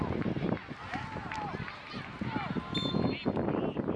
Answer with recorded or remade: recorded